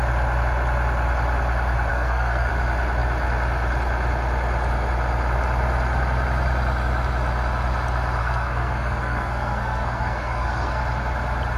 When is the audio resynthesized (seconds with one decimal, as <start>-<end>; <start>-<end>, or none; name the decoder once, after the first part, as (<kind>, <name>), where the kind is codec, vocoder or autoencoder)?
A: 1.9-2.5 (codec, SNAC); 8.2-10.8